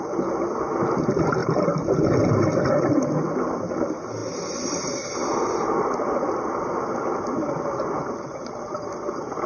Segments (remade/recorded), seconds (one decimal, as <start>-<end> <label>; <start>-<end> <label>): 0.0-9.5 recorded